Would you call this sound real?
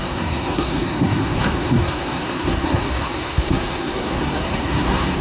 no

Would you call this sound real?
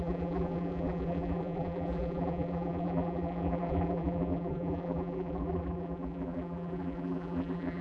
no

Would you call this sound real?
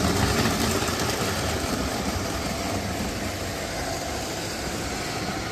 yes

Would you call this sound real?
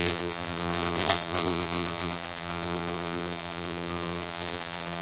no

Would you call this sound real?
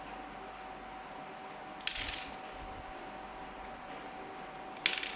yes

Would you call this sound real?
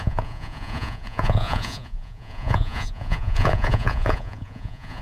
no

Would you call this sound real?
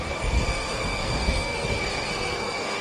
no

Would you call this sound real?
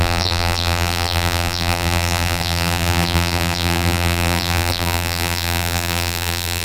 no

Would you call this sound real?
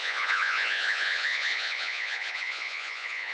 no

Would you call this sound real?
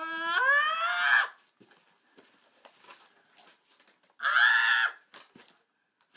yes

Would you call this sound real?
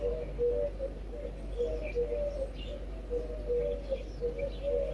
yes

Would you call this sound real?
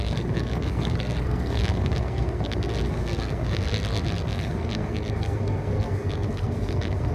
no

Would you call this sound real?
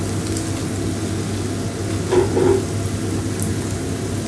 yes